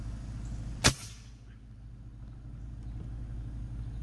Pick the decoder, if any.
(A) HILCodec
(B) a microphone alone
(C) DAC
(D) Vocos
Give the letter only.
B